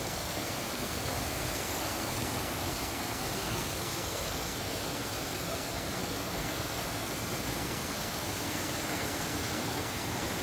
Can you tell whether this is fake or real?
fake